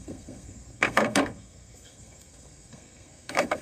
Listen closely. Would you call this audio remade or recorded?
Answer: remade